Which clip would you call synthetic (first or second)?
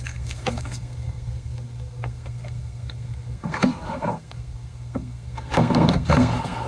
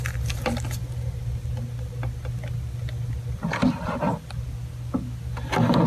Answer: first